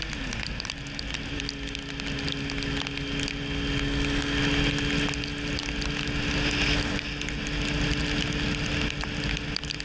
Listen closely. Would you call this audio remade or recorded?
recorded